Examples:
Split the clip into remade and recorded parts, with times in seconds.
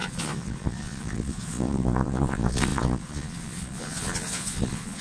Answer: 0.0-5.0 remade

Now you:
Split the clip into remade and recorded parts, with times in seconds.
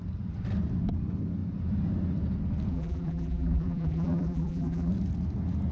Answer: 0.0-2.7 recorded; 2.7-4.9 remade; 4.9-5.7 recorded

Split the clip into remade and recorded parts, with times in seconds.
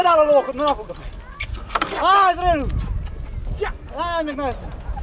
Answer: 0.0-1.5 recorded; 1.5-2.0 remade; 2.0-5.0 recorded